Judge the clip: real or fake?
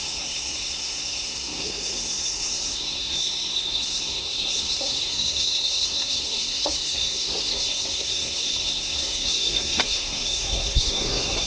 fake